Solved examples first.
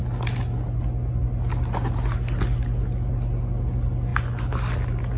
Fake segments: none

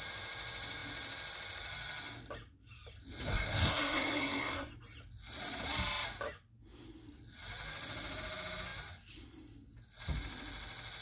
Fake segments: 3.3-4.7 (codec, SNAC)

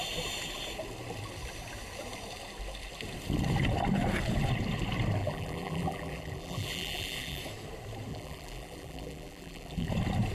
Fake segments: 5.2-7.4 (vocoder, BigVGAN v2); 8.1-9.9

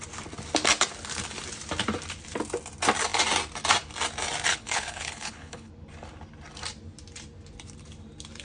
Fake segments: 4.5-5.7 (codec, HILCodec)